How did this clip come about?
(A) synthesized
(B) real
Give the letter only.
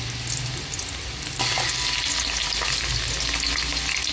B